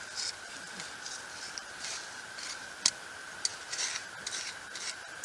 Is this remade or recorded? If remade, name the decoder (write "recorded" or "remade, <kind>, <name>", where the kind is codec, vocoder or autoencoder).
recorded